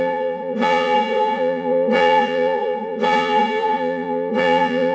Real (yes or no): no